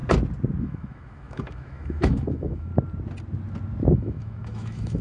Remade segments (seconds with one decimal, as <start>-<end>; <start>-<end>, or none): 0.6-2.7; 3.9-5.0